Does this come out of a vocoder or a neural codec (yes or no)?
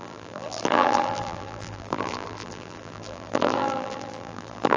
yes